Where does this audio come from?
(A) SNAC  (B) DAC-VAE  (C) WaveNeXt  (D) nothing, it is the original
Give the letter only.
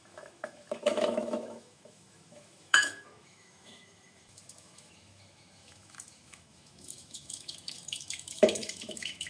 B